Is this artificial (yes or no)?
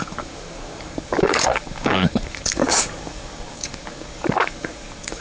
yes